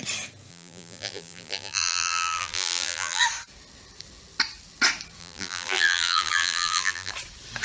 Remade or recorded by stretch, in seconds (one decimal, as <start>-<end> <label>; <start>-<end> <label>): 0.0-0.5 recorded; 0.5-3.2 remade; 3.2-5.2 recorded; 5.2-7.1 remade; 7.1-7.6 recorded